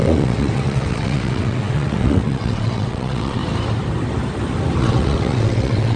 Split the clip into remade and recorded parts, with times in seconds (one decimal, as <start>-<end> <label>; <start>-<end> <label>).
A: 0.0-3.4 remade; 3.4-4.8 recorded; 4.8-6.0 remade